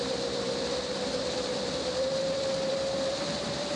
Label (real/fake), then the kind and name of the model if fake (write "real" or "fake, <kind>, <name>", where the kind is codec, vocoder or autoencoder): fake, vocoder, BigVGAN v2